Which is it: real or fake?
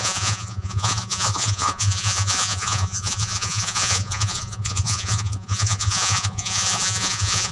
fake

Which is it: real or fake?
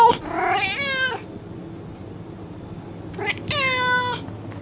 real